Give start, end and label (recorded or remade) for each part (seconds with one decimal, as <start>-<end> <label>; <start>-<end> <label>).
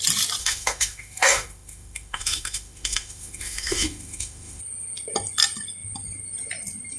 0.0-0.4 recorded; 0.4-4.6 remade; 4.6-7.0 recorded